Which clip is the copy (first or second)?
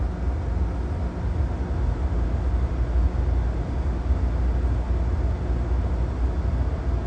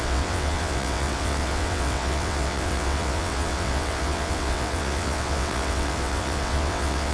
second